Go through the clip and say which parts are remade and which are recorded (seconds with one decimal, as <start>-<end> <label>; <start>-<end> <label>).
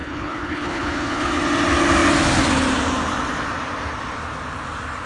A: 0.0-1.3 remade; 1.3-5.1 recorded